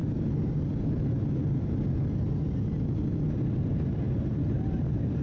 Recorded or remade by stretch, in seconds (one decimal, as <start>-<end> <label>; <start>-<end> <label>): 0.0-5.2 recorded